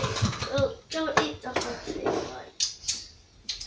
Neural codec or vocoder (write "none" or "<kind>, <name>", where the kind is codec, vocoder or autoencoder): none